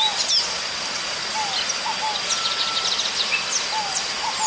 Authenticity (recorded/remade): recorded